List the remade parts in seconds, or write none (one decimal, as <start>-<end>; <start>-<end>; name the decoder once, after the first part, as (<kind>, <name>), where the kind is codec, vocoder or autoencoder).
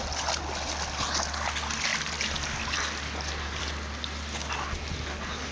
none